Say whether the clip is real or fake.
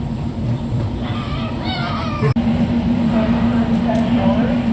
fake